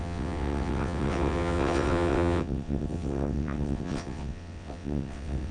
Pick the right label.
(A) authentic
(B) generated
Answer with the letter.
B